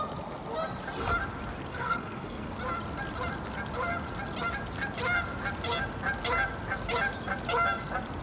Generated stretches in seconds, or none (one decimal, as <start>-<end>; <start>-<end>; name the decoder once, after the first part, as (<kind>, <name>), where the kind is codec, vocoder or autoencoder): 1.7-2.5 (codec, SNAC)